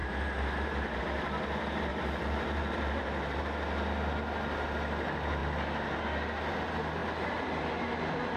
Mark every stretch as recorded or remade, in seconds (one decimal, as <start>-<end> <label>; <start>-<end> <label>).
0.0-1.0 remade; 1.0-1.9 recorded; 1.9-3.4 remade; 3.4-8.4 recorded